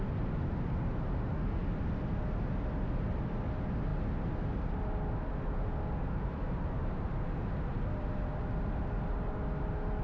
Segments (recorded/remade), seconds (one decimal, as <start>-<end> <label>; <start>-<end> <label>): 0.0-10.0 recorded